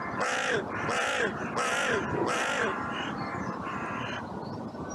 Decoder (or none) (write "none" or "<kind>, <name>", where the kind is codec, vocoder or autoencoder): none